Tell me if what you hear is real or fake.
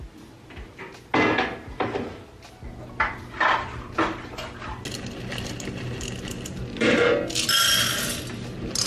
real